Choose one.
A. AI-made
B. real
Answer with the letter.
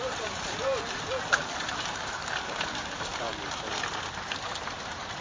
A